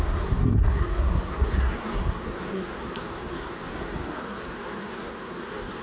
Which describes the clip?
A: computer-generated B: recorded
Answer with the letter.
A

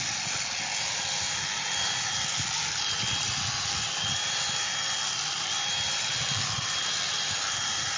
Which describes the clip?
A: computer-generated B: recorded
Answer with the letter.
A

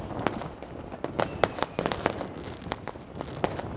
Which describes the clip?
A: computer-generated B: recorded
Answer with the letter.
B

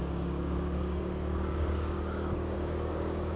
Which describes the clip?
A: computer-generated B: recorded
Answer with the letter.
A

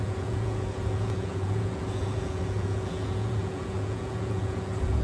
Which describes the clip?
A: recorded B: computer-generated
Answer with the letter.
B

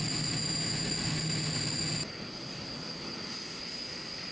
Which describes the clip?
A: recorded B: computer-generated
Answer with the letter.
A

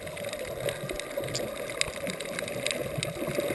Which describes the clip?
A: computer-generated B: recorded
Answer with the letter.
B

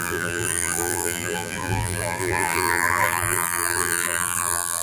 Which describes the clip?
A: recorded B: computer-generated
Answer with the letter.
B